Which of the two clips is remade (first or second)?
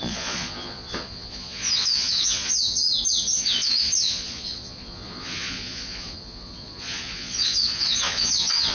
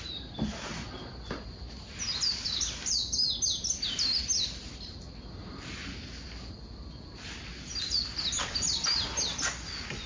first